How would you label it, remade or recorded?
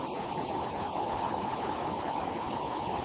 remade